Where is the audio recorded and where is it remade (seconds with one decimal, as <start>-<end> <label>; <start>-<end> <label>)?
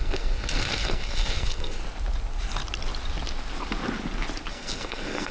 0.0-1.8 remade; 1.8-4.5 recorded; 4.5-5.3 remade